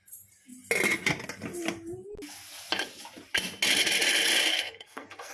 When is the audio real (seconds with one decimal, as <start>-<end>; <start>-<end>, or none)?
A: 0.0-4.5